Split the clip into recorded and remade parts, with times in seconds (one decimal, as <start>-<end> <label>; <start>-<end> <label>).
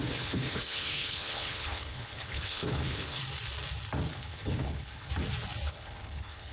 0.0-3.2 remade; 3.2-4.1 recorded; 4.1-5.1 remade; 5.1-5.7 recorded; 5.7-6.5 remade